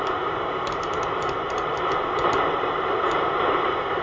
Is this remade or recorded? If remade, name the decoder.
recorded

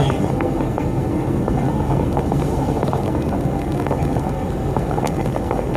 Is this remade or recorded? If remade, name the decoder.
remade, codec, SNAC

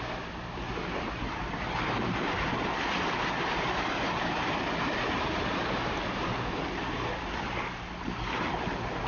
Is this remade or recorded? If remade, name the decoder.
recorded